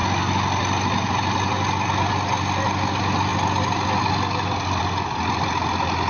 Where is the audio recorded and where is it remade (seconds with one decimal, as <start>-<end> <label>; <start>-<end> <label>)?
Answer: 0.0-6.1 recorded